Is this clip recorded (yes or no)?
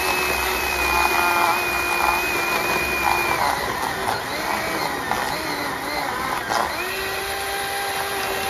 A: yes